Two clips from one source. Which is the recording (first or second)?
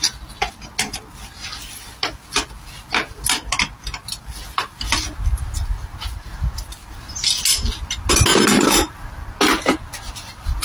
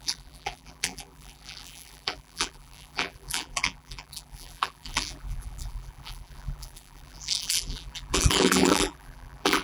first